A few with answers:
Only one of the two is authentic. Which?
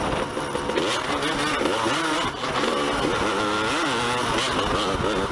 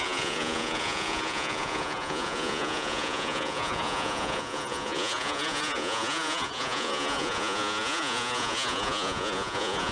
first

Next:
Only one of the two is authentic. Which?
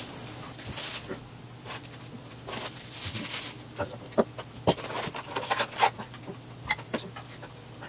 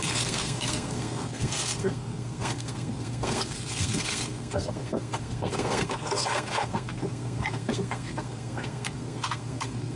first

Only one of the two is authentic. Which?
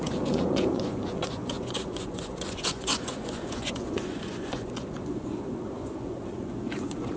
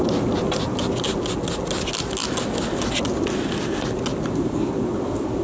second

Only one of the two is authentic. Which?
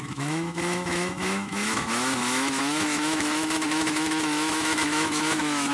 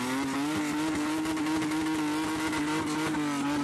second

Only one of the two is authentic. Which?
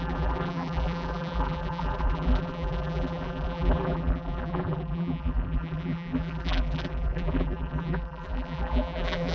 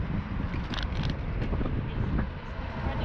second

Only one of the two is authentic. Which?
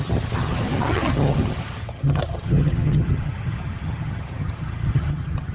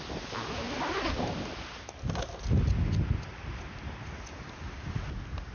second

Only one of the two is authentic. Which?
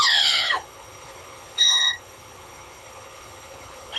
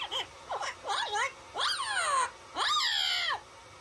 second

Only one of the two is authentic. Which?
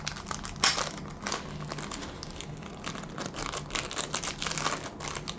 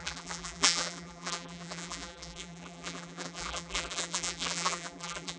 first